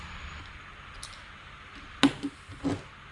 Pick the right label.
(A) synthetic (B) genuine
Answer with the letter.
B